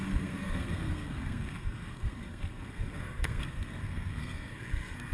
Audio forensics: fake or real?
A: fake